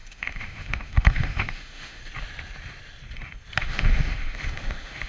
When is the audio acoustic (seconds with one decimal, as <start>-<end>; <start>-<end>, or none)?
2.0-3.6